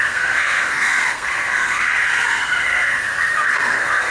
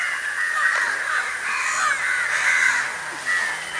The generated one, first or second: first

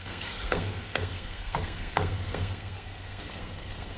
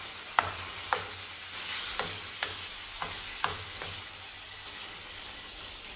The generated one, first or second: first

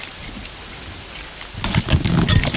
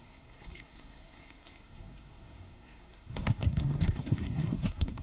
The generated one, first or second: second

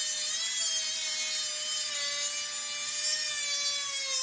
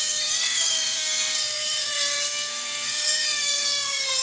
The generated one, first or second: second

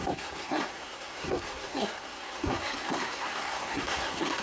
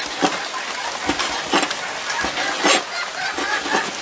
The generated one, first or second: first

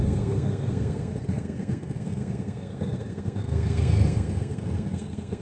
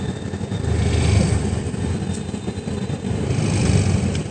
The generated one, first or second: first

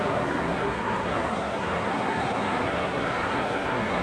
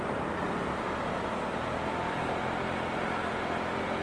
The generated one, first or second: first